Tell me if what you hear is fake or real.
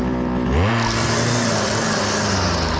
real